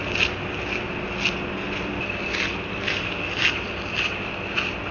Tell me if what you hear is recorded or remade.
recorded